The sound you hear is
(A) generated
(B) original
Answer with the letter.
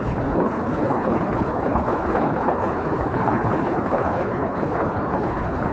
A